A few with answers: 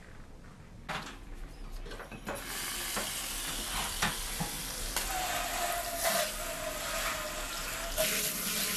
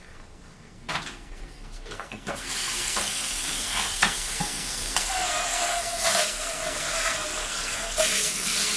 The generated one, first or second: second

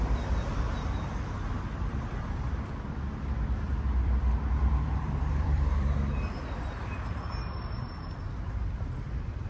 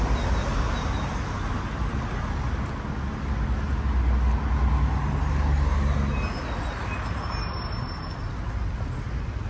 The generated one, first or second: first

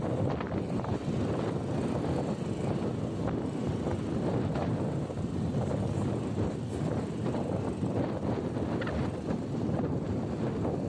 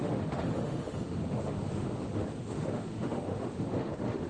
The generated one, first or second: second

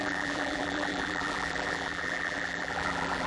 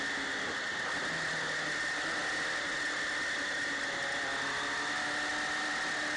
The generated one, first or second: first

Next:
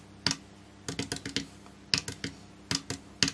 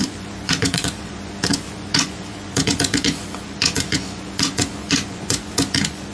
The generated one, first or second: second